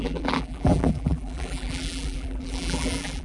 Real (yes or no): no